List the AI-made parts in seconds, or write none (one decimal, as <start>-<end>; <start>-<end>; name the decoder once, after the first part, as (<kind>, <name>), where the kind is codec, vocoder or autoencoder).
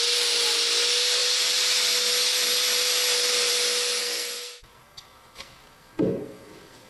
4.0-6.9 (codec, SNAC)